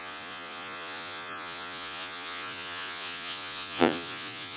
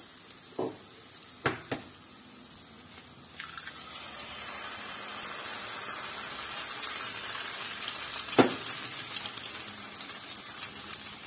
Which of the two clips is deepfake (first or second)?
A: first